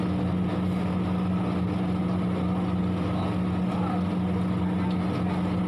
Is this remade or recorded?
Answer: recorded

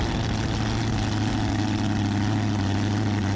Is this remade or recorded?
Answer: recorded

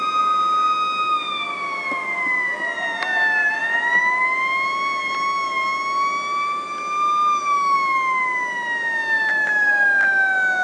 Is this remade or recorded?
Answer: recorded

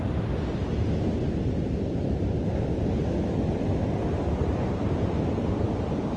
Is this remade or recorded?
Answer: recorded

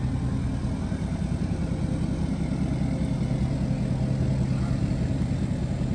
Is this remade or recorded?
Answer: recorded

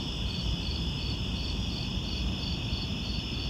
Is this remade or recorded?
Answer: remade